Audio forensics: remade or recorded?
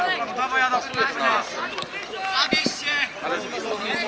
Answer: recorded